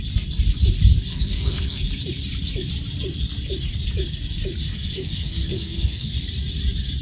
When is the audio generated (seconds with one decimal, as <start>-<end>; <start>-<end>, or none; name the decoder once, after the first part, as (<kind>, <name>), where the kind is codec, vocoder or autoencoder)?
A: 1.1-1.9 (codec, SNAC); 4.7-6.1